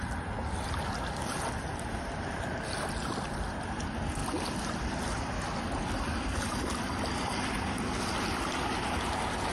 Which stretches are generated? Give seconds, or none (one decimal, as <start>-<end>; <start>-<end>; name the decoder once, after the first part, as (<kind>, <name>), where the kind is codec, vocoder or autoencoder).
none